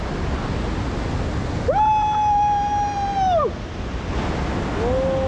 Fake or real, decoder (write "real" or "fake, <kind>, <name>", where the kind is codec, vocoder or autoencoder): real